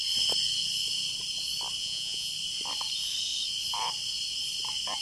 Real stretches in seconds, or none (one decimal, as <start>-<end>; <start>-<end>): 0.0-1.8; 2.3-5.0